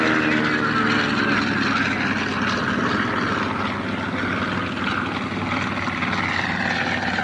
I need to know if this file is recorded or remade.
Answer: recorded